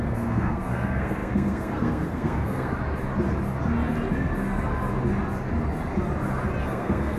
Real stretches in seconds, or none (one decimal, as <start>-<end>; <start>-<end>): 2.7-6.6